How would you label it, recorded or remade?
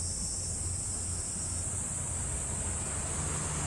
recorded